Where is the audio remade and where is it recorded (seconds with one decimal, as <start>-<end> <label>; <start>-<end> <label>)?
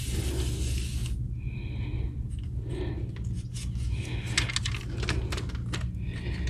0.0-6.5 recorded